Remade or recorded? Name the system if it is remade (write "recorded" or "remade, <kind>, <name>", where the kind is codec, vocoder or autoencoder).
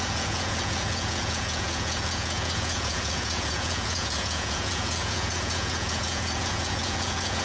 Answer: remade, vocoder, Vocos